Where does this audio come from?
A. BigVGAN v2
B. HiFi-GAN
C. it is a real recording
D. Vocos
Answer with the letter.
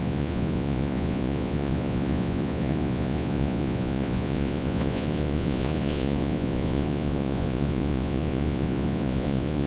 D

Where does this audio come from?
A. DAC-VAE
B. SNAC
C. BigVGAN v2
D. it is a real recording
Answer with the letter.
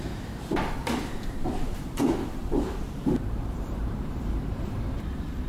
C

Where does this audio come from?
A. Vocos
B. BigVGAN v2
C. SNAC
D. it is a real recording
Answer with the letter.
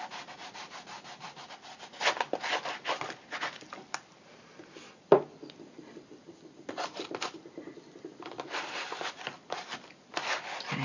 D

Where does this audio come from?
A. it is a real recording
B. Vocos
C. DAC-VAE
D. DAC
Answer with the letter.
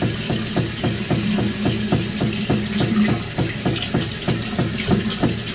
A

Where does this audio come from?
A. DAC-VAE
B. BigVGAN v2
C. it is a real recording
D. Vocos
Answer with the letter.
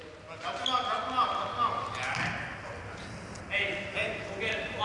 C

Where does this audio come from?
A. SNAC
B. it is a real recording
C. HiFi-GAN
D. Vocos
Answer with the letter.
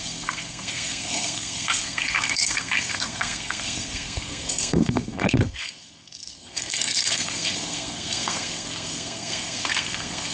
A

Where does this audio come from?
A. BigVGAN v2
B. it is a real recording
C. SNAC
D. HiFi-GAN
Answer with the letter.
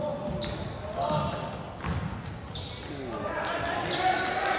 B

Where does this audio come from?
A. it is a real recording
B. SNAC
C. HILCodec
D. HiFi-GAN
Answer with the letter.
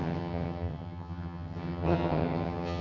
D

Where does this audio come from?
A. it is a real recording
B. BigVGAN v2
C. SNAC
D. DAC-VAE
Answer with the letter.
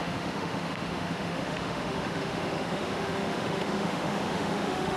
D